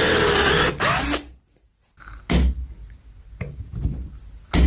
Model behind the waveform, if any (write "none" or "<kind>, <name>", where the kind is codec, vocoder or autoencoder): none